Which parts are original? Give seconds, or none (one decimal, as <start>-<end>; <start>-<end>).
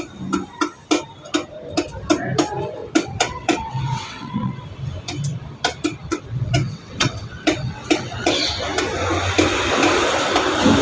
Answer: 0.0-2.8; 4.6-6.1; 8.5-10.8